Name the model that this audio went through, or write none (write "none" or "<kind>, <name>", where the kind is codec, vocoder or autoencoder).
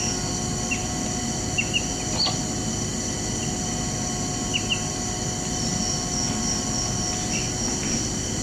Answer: none